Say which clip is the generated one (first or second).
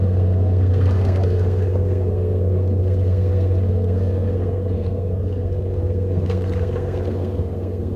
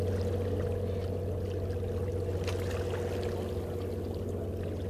first